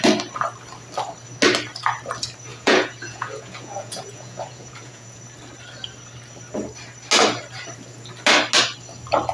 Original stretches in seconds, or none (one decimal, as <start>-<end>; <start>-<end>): 0.0-2.5; 5.2-9.3